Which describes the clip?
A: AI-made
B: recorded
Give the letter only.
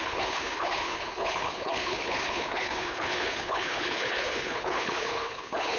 A